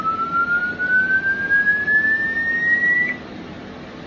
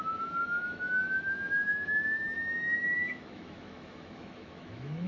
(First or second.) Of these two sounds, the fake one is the second